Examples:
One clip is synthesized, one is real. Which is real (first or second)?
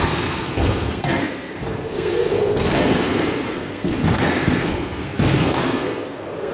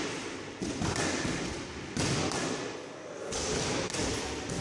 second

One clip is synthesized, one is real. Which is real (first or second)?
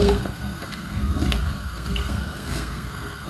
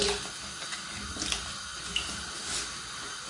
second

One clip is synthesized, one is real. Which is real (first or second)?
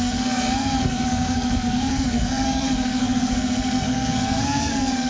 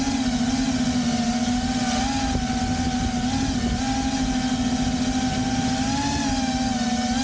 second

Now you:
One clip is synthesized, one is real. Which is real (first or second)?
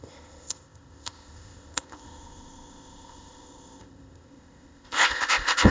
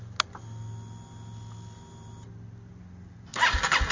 second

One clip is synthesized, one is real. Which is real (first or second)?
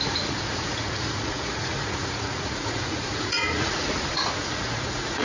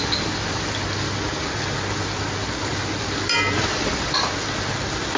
second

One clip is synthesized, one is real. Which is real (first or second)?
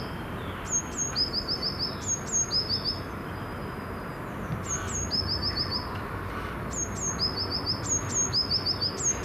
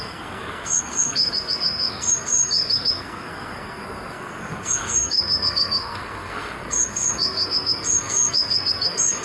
first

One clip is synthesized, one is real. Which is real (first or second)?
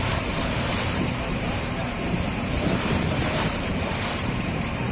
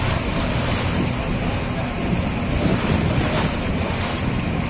second